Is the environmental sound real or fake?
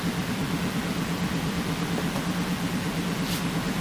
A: real